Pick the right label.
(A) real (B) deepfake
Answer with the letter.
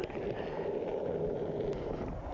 A